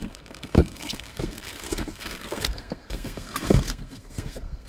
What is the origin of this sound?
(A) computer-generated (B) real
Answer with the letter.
A